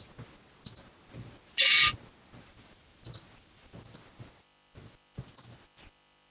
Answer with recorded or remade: recorded